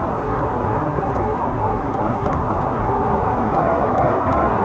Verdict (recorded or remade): remade